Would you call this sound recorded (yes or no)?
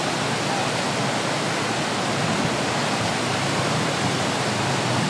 yes